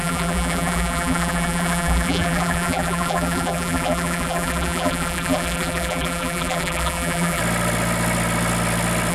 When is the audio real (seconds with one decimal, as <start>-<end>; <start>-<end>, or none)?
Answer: 7.4-9.1